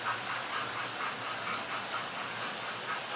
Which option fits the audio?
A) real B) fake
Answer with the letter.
A